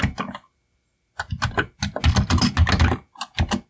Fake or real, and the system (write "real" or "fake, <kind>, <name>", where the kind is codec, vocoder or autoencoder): real